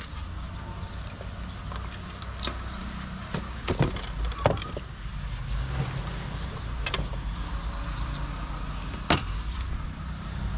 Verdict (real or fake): real